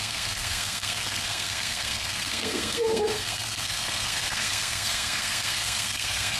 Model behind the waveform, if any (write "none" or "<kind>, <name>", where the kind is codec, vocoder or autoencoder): codec, SNAC